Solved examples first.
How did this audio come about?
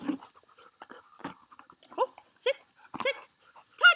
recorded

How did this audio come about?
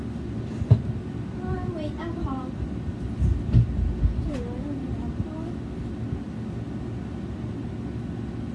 recorded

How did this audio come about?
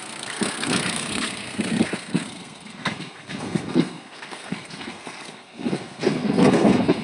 remade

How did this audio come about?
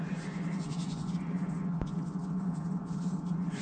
remade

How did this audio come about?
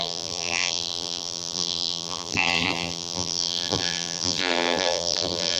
remade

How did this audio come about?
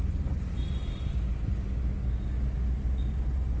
recorded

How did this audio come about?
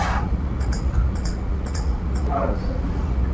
remade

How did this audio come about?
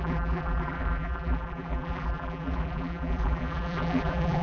remade